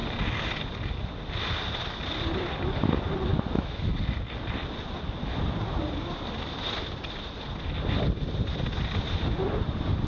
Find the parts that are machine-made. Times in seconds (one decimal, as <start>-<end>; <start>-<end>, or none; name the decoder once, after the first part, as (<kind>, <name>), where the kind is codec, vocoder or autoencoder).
3.3-3.9 (autoencoder, DAC-VAE)